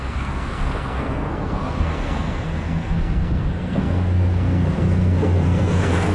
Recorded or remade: remade